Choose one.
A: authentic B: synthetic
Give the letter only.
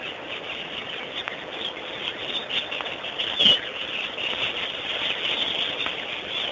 A